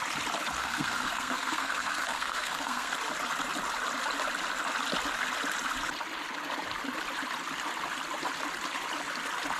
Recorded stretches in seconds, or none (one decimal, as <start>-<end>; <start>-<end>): 0.0-0.6; 2.9-9.6